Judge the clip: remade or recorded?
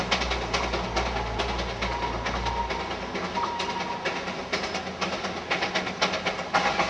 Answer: recorded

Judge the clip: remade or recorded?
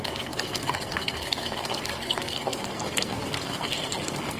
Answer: remade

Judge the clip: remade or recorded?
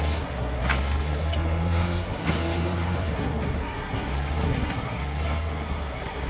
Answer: remade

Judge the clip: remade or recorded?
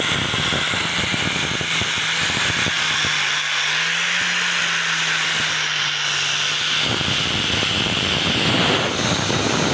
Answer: recorded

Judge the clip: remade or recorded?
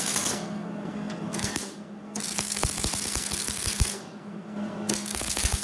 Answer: remade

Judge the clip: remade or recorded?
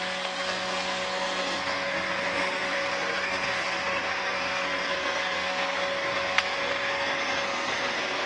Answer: remade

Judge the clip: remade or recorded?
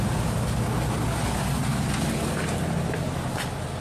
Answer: recorded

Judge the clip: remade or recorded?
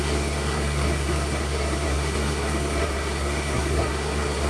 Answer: remade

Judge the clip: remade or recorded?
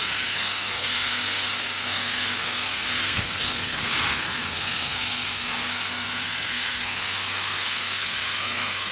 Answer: remade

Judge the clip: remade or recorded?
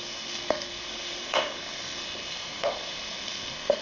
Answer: remade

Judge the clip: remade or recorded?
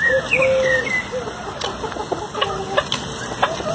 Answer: recorded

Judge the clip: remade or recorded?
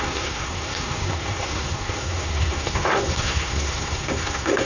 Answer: remade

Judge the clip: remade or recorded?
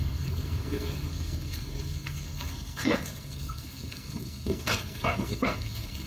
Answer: remade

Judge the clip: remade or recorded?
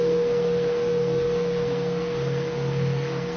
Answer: remade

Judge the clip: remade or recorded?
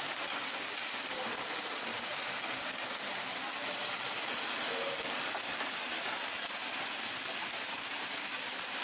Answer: recorded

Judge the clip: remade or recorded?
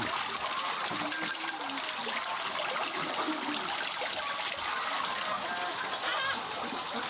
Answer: recorded